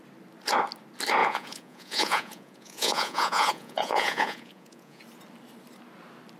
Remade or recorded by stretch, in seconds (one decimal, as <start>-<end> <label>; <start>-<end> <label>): 0.0-1.2 recorded; 1.2-5.0 remade; 5.0-6.4 recorded